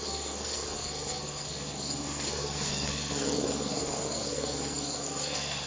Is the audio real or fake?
fake